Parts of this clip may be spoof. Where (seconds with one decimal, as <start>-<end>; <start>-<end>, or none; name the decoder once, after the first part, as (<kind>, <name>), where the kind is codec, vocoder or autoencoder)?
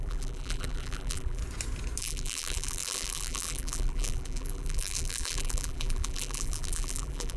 0.0-1.4 (vocoder, BigVGAN v2); 2.0-7.4